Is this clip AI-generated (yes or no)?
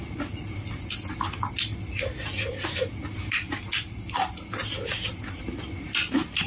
no